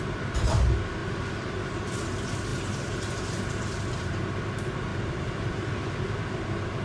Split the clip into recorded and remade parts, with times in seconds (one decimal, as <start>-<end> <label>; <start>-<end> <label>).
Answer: 0.0-2.5 recorded; 2.5-4.4 remade; 4.4-4.9 recorded; 4.9-5.4 remade; 5.4-6.8 recorded